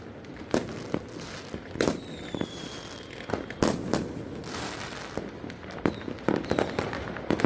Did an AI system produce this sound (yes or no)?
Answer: no